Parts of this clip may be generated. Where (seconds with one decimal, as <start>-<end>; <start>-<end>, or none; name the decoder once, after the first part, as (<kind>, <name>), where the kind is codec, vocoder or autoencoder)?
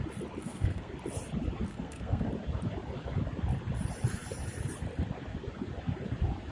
0.4-0.9 (codec, SNAC); 1.7-2.3